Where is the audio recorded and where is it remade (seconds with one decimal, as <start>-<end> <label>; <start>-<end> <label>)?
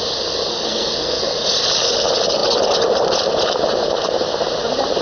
0.0-0.5 recorded; 0.5-1.2 remade; 1.2-5.0 recorded